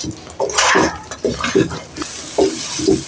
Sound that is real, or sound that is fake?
real